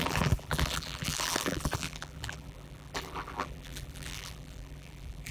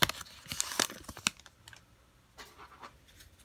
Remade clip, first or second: first